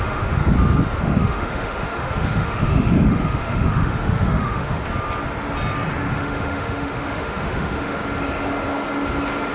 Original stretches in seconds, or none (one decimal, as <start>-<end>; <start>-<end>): 0.4-1.0; 4.8-6.1; 8.0-9.5